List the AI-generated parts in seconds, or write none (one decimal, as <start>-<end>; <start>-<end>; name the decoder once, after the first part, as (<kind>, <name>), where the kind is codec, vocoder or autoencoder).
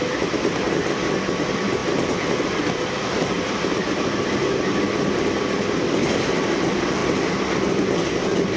none